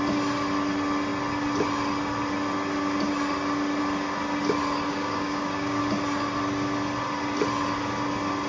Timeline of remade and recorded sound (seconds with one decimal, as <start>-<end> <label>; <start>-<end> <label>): 0.0-4.9 recorded; 4.9-5.8 remade; 5.8-8.5 recorded